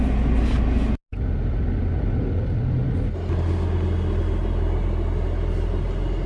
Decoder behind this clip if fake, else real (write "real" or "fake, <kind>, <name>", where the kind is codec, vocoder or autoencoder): real